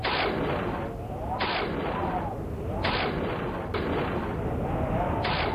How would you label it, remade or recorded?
recorded